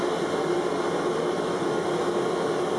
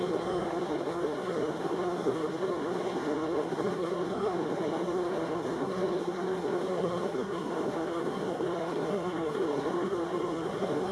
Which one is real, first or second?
first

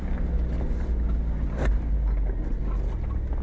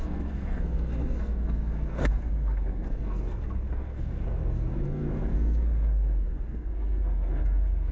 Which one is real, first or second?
first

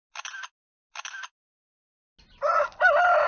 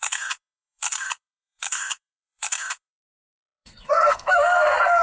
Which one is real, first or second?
first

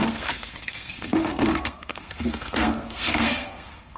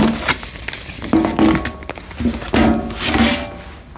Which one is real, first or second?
second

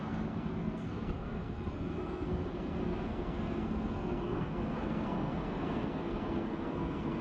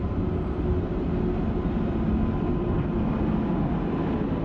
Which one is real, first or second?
second